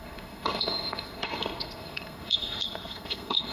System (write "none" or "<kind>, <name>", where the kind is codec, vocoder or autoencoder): codec, SNAC